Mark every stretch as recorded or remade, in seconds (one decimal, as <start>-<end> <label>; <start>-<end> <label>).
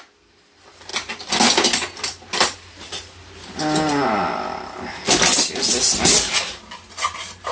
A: 0.0-7.5 recorded